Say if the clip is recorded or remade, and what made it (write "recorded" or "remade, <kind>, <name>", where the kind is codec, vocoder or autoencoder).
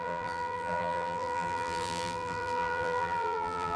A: remade, vocoder, BigVGAN v2